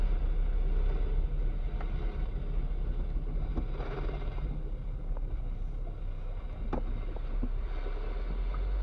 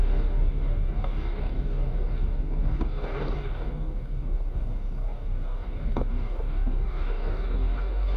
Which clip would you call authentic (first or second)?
first